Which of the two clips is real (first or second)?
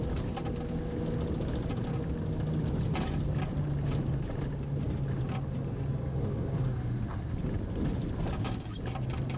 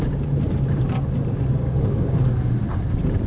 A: first